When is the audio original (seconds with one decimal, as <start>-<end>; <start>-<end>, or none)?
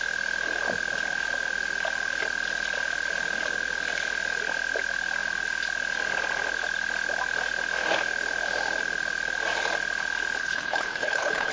0.0-10.4